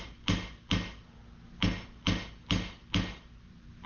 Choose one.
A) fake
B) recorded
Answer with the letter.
B